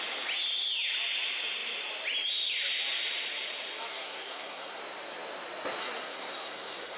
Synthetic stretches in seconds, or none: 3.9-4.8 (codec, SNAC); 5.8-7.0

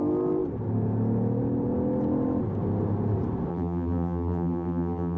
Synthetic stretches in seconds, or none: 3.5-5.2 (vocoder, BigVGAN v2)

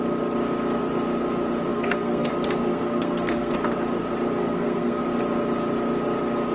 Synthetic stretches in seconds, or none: 1.7-2.3 (codec, SNAC); 2.7-3.5; 4.4-5.0

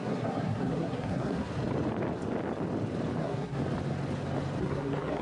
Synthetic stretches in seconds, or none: 0.0-1.5 (codec, SNAC); 3.2-3.6; 4.6-5.2

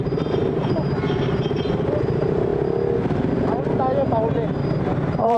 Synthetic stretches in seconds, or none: 0.0-2.5 (vocoder, BigVGAN v2); 4.6-5.4

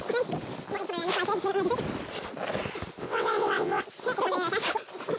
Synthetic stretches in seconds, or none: 3.0-3.8 (vocoder, WaveNeXt)